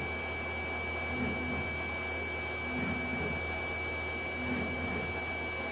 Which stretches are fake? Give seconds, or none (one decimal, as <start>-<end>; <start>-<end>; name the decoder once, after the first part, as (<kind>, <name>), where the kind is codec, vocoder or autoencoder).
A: none